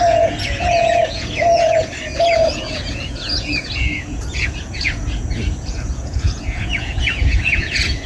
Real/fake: fake